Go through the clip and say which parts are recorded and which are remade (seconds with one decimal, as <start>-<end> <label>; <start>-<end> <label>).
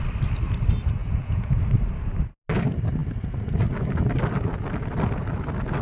0.0-1.0 recorded; 1.0-1.7 remade; 1.7-5.8 recorded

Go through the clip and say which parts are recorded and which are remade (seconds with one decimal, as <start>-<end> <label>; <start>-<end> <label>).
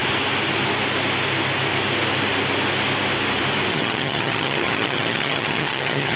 0.0-3.7 recorded; 3.7-6.2 remade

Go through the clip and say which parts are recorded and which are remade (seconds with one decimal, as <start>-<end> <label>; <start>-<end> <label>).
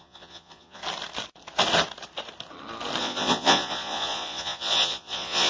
0.0-0.8 remade; 0.8-3.0 recorded; 3.0-5.5 remade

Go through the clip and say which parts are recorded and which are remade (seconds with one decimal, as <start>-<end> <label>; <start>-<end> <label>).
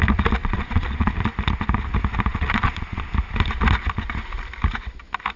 0.0-0.4 recorded; 0.4-1.1 remade; 1.1-2.3 recorded; 2.3-3.1 remade; 3.1-5.4 recorded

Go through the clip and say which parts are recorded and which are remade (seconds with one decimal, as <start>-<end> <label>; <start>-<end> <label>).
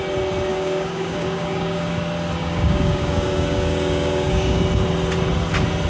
0.0-0.5 recorded; 0.5-2.0 remade; 2.0-2.4 recorded; 2.4-4.6 remade; 4.6-5.9 recorded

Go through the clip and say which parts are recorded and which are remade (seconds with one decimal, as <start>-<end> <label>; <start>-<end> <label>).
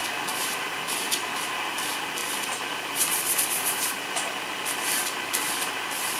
0.0-6.2 recorded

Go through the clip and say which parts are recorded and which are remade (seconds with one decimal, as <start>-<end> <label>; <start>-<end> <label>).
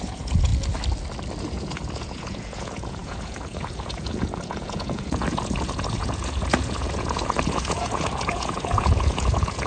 0.0-0.5 remade; 0.5-1.4 recorded; 1.4-9.7 remade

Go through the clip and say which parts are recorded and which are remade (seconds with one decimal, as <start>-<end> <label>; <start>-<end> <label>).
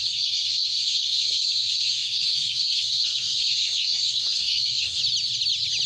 0.0-5.0 remade; 5.0-5.9 recorded